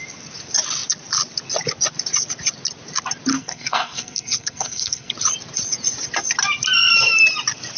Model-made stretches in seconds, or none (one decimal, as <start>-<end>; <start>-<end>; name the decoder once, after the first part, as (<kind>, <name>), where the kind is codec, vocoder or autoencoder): 3.3-5.1 (codec, SNAC)